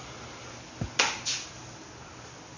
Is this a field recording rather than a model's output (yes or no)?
yes